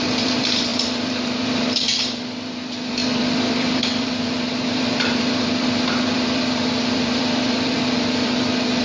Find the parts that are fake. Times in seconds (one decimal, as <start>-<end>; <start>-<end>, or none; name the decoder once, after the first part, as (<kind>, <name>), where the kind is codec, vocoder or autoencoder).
0.0-8.8 (vocoder, BigVGAN v2)